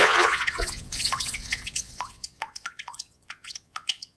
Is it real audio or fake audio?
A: fake